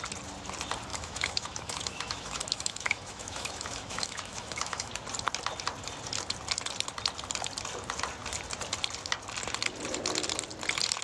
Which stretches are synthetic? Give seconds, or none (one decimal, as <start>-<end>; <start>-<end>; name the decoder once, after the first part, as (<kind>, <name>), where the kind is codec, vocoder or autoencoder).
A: 0.9-4.9 (autoencoder, DAC-VAE)